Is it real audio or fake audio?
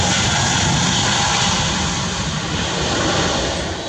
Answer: real